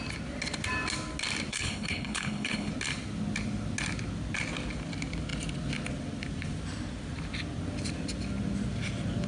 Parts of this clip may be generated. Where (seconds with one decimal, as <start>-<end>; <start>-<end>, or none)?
1.5-2.7